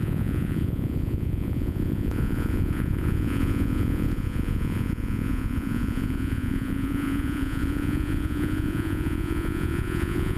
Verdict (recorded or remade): remade